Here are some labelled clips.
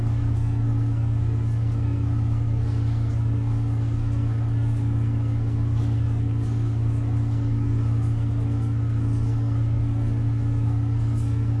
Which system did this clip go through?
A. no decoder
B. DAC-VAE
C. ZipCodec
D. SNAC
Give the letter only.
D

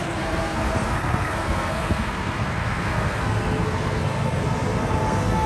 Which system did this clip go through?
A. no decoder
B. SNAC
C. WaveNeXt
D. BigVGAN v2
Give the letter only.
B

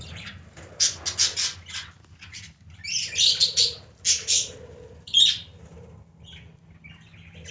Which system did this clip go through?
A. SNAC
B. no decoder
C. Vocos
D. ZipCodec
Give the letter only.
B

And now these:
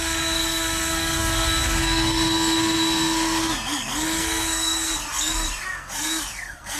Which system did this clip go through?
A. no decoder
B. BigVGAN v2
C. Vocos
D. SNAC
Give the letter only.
D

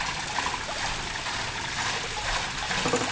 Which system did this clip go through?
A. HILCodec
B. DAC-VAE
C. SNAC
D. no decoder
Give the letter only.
D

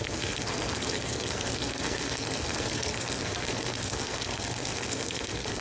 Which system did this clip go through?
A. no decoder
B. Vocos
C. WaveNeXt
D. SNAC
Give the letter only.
D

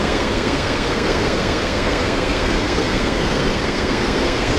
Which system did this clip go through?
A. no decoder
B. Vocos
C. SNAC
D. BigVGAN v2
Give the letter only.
C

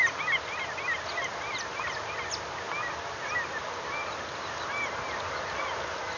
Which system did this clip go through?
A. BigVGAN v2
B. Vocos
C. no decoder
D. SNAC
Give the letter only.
C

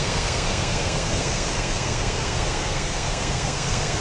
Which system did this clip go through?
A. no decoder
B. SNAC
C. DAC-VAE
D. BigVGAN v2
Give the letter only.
B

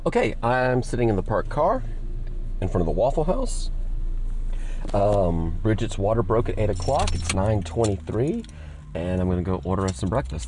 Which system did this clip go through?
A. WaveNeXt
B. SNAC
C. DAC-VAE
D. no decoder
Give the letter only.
D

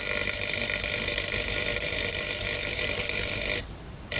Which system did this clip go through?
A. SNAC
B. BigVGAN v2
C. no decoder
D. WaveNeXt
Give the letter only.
C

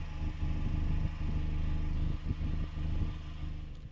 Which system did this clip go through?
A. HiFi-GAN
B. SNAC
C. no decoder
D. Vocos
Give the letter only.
C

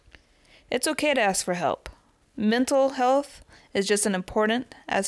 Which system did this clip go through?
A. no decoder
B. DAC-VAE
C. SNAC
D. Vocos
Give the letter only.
A